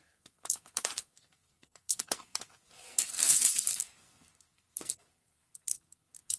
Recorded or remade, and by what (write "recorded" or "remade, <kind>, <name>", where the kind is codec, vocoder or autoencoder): remade, codec, SNAC